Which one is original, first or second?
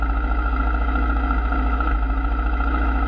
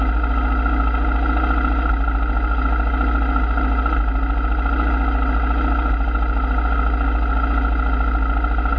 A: second